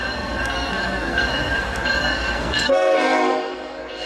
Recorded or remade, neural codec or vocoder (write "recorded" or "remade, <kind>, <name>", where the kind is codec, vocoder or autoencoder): remade, codec, SNAC